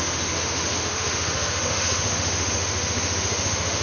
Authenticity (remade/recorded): remade